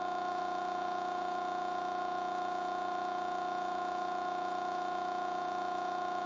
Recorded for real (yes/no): no